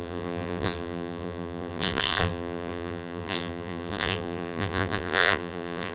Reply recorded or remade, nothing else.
remade